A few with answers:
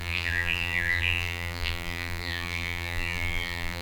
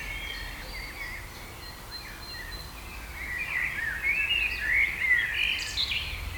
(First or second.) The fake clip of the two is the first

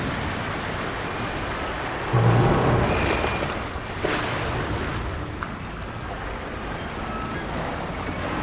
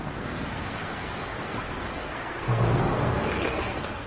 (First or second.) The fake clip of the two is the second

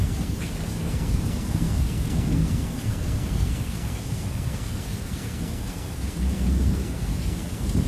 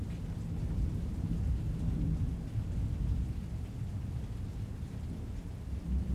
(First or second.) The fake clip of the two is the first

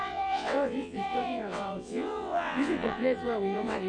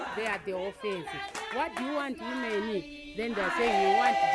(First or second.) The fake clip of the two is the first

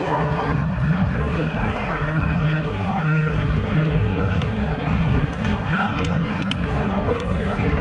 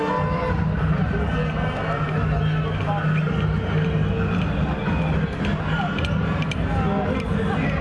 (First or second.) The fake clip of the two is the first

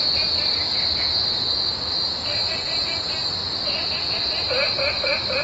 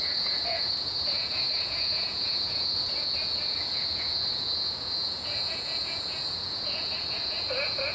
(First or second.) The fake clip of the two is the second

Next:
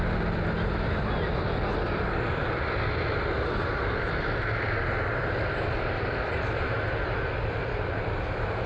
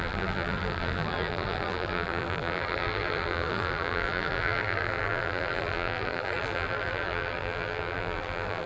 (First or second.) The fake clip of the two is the second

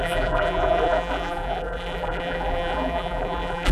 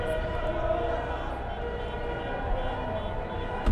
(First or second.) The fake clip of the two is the first